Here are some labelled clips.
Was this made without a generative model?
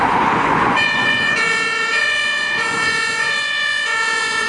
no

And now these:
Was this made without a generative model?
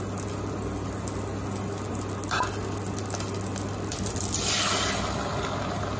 yes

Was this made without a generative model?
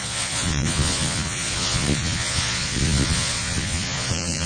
no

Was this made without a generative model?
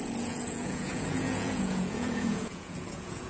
no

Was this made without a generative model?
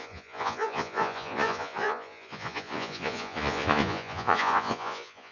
no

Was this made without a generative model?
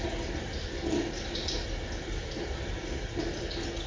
yes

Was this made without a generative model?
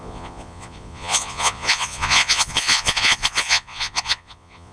no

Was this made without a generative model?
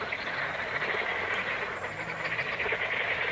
yes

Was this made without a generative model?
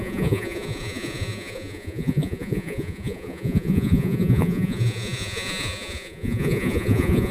no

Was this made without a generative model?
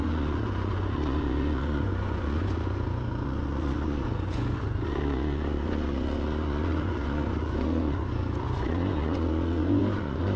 no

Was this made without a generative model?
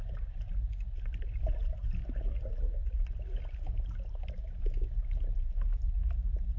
yes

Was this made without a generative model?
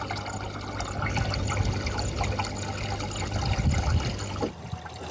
yes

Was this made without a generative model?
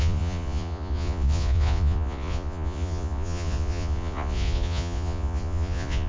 no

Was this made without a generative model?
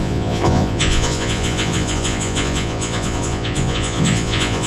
no